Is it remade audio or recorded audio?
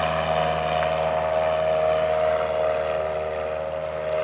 recorded